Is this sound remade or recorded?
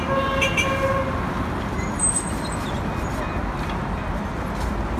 recorded